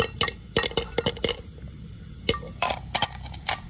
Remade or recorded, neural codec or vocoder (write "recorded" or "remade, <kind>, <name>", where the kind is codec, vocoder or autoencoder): recorded